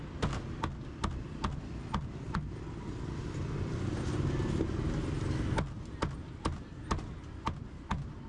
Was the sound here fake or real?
real